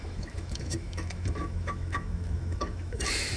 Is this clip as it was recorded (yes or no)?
no